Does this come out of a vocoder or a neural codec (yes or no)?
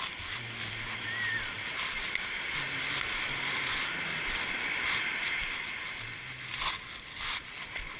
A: no